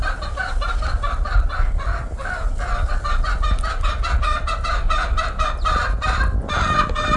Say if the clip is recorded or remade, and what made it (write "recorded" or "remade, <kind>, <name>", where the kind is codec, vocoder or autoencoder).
recorded